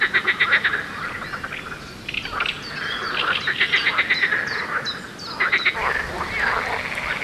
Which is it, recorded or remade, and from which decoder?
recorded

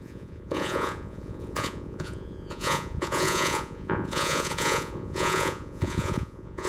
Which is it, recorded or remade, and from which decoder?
remade, vocoder, Vocos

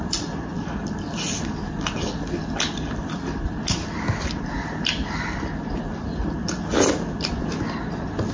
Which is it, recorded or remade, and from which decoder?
recorded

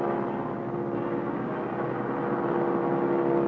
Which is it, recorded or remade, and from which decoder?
recorded